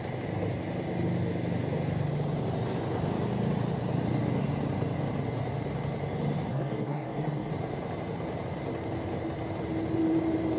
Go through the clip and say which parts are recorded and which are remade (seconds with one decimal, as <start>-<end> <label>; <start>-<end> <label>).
0.0-6.5 recorded; 6.5-7.5 remade; 7.5-10.6 recorded